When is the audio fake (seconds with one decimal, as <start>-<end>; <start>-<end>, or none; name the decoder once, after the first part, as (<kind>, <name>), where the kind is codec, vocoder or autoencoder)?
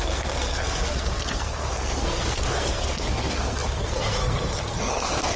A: 0.0-5.4 (codec, SNAC)